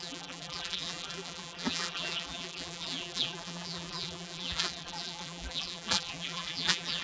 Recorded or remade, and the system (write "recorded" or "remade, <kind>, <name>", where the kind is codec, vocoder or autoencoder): remade, vocoder, BigVGAN v2